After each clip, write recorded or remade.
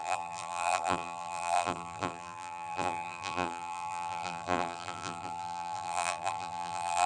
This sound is remade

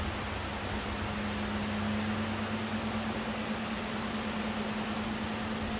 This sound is recorded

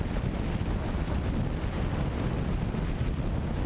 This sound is remade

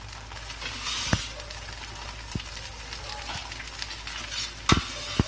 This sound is recorded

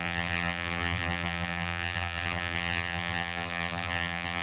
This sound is remade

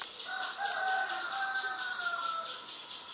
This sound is recorded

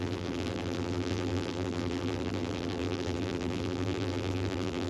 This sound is remade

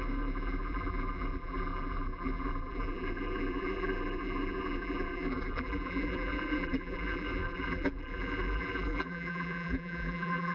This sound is remade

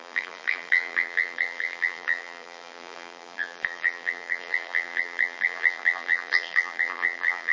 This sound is remade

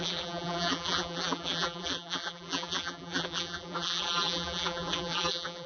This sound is remade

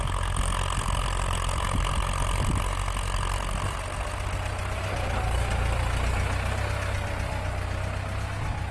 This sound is recorded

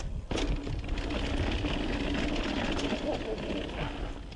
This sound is recorded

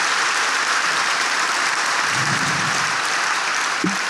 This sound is remade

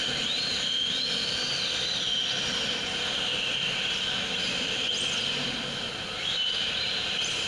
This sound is recorded